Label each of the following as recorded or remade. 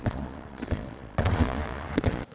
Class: remade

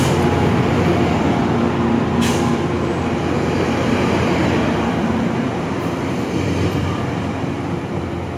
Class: remade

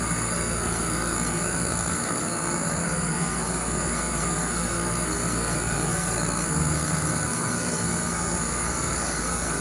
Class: remade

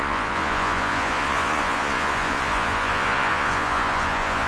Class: remade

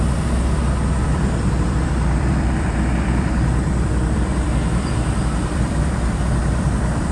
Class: remade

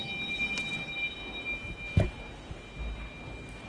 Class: recorded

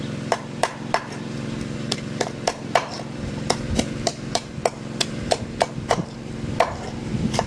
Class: remade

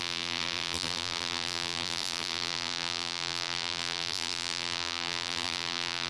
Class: remade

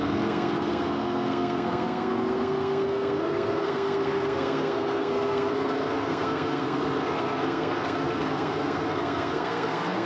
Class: remade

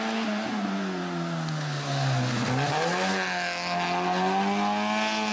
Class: recorded